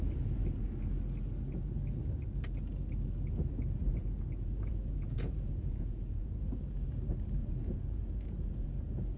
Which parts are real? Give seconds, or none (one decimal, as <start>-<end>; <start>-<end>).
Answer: 0.0-4.0; 6.5-7.4